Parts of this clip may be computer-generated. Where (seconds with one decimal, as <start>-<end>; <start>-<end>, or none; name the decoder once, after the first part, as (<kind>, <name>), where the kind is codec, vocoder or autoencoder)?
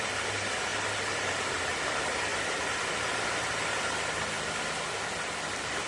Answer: 0.7-1.8 (vocoder, BigVGAN v2); 2.3-5.9